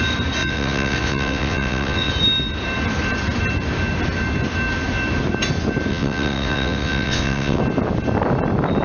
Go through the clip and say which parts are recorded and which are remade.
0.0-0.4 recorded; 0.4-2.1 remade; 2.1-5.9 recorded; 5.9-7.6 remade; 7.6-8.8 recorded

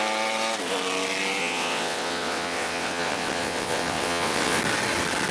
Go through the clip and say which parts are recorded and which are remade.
0.0-1.4 recorded; 1.4-4.6 remade; 4.6-5.3 recorded